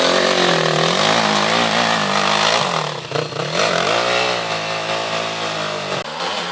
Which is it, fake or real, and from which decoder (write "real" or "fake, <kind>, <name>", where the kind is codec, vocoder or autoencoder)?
real